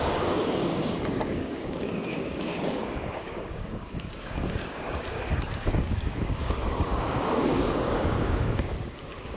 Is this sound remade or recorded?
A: remade